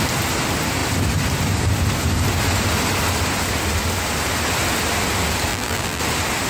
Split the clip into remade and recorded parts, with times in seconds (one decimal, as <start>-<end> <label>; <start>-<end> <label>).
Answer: 0.0-5.5 recorded; 5.5-6.0 remade; 6.0-6.5 recorded